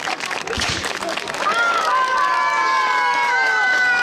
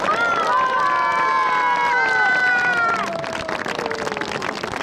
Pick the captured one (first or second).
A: second